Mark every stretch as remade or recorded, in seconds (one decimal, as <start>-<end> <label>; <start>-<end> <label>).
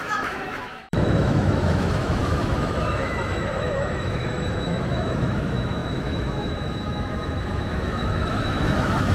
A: 0.0-9.1 remade